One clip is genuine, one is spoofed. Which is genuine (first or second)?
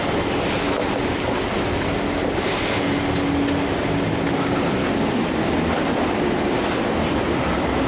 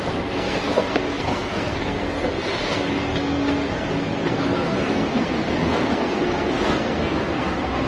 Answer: first